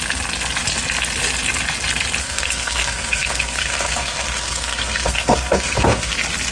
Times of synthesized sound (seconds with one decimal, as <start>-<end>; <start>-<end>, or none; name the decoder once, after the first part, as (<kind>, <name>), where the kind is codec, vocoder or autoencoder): 2.2-6.1 (codec, SNAC)